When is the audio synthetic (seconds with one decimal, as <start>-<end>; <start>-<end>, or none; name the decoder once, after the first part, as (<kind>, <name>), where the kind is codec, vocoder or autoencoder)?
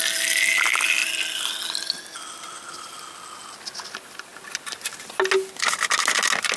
none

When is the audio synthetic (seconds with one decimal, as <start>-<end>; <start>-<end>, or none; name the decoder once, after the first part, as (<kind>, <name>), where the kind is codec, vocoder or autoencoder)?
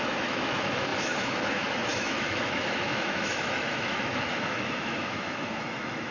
0.0-6.1 (autoencoder, DAC-VAE)